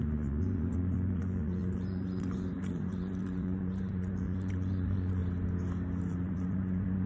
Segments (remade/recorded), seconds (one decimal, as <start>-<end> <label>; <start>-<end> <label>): 0.0-5.2 remade; 5.2-6.1 recorded; 6.1-7.1 remade